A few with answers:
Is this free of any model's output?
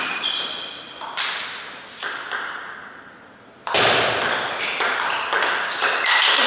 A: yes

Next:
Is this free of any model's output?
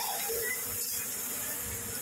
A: yes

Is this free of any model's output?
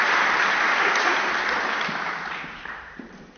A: no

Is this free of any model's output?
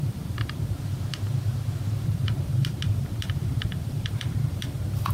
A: no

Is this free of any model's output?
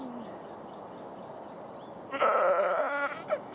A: yes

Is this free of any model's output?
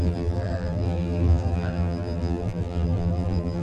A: no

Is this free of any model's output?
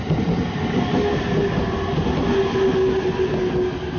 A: yes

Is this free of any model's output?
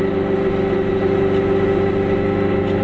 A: yes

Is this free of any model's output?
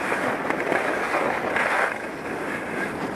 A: yes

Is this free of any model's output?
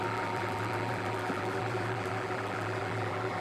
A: no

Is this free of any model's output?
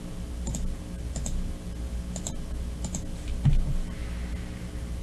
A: yes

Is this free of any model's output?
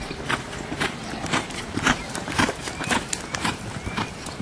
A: no